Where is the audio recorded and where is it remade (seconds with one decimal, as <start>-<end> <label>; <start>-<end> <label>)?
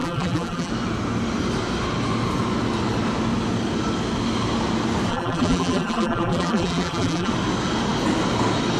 0.0-0.7 remade; 0.7-5.1 recorded; 5.1-7.3 remade; 7.3-8.8 recorded